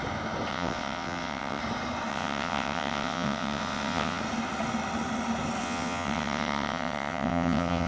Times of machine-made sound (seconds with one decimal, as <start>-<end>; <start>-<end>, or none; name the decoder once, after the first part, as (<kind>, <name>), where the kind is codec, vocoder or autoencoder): 0.5-1.6 (vocoder, WaveNeXt); 2.1-4.2; 5.6-7.9

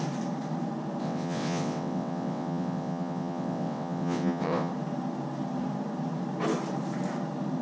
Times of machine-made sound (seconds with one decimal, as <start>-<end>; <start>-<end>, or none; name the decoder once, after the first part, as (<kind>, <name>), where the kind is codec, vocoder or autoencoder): 1.0-4.7 (vocoder, WaveNeXt)

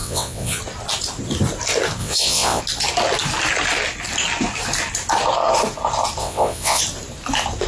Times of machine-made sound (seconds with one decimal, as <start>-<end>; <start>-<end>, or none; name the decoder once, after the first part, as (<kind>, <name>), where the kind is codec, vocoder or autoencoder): 0.0-0.6 (vocoder, WaveNeXt); 2.0-2.6; 6.2-6.8

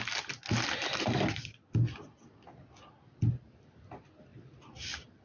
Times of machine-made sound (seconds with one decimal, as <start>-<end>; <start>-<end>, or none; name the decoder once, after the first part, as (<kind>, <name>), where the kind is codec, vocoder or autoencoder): none

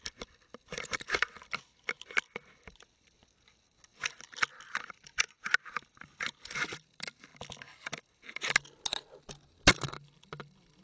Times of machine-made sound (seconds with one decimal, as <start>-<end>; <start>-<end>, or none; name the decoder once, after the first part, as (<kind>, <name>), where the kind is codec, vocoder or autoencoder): none

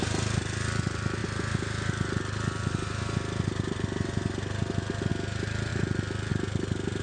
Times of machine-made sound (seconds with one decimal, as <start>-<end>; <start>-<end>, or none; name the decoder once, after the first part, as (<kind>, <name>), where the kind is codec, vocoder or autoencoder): none

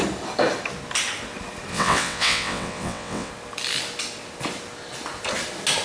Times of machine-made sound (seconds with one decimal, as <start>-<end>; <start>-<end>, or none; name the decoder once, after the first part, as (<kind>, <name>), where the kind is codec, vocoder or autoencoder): 1.7-3.3 (vocoder, WaveNeXt)